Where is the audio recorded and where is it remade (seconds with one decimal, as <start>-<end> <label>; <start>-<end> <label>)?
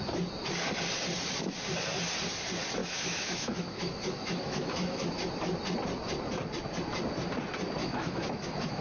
0.0-2.8 recorded; 2.8-5.1 remade; 5.1-7.8 recorded; 7.8-8.8 remade